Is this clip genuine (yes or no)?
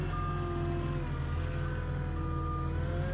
yes